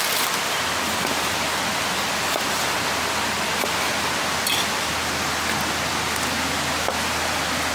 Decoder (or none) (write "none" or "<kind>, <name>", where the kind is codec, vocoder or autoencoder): none